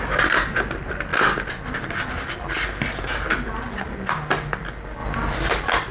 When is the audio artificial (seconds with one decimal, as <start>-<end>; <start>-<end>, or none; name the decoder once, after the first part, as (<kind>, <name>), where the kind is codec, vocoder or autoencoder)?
5.0-5.5 (vocoder, BigVGAN v2)